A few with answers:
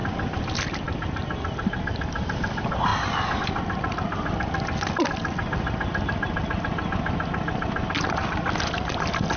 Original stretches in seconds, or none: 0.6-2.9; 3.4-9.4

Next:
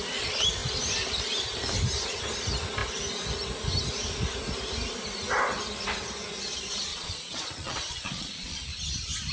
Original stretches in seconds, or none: 0.0-6.9; 8.7-9.3

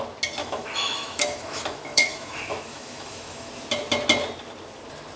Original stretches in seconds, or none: 0.0-0.4; 3.5-5.2

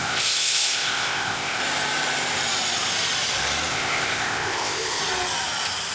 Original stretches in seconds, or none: 1.6-3.7; 5.0-5.9

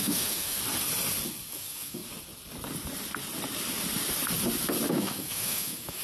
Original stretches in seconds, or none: 0.6-1.5; 2.0-4.9